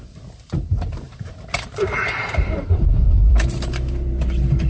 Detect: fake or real fake